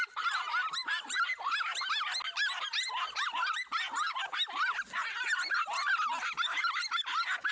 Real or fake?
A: real